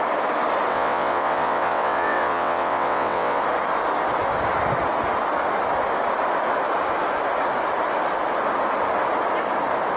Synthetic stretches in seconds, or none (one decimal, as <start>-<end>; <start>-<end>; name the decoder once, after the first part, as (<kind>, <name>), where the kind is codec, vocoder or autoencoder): 0.7-3.4 (vocoder, WaveNeXt)